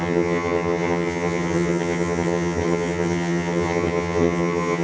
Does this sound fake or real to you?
fake